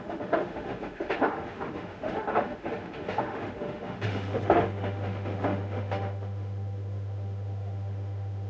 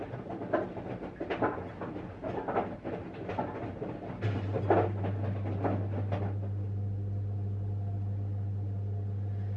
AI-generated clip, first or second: first